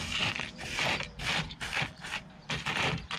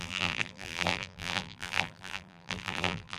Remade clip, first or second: second